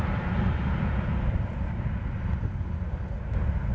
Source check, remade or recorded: recorded